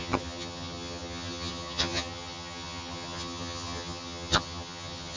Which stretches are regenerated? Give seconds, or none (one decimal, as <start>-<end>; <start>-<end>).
0.0-5.2

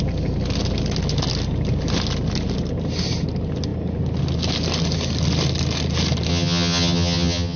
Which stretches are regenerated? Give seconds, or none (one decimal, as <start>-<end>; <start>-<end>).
6.3-7.6

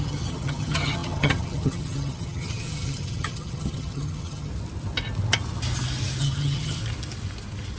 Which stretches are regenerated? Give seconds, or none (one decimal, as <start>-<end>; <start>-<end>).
0.0-4.5; 6.2-6.8

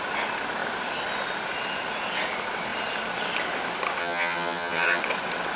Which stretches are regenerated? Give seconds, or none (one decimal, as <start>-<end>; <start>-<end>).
4.0-5.0

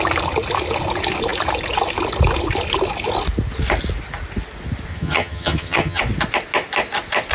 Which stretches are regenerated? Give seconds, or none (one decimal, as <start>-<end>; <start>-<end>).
4.9-6.0

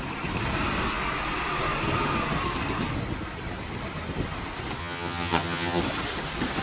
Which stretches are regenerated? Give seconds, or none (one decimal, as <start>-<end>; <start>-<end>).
4.8-5.8

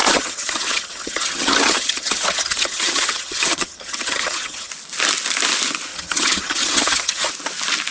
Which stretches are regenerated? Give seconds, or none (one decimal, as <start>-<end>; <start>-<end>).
0.0-4.7; 5.9-7.3

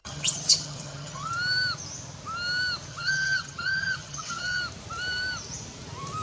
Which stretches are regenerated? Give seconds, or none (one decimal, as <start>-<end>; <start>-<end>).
0.0-1.3; 2.9-4.6